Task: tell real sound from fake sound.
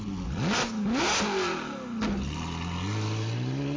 real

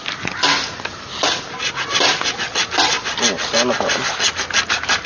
real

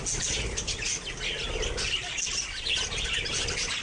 real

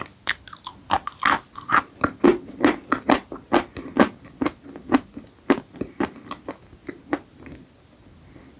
real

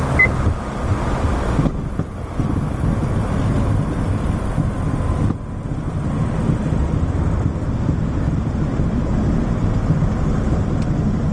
real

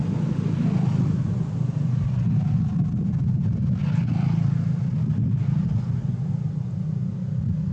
real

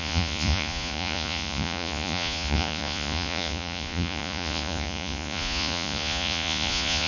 fake